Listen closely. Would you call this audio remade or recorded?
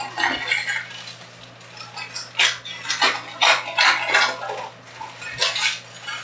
recorded